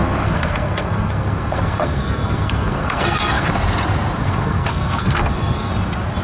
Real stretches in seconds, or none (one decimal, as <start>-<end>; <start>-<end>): 3.5-4.2; 5.7-6.2